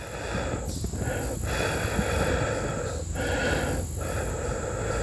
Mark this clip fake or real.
real